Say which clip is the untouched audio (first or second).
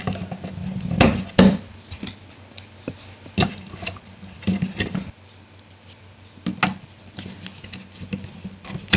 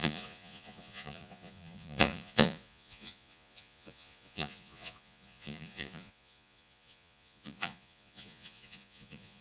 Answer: first